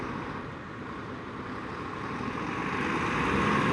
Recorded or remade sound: recorded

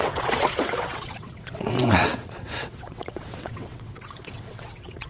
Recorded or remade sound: remade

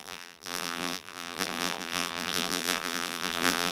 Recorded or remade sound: remade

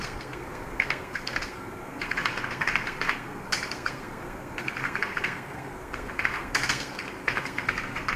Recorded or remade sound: remade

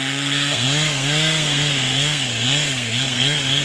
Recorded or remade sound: remade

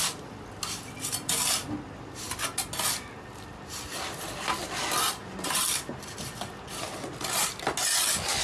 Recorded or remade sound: recorded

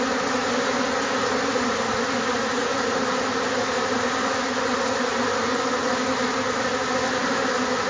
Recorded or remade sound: recorded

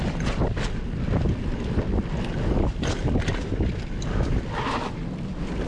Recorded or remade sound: recorded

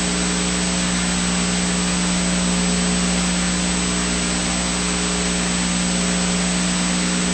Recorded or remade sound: recorded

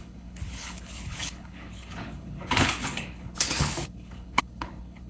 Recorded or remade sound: remade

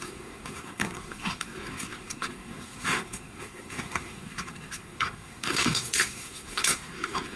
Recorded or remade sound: remade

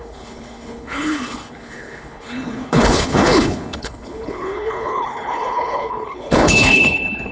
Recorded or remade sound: remade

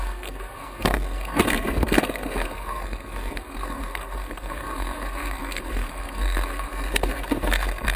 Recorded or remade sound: remade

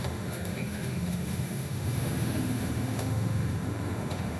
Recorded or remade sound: remade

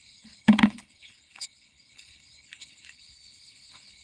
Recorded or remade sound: remade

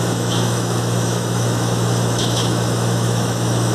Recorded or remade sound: remade